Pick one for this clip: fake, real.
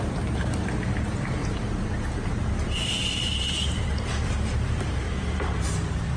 fake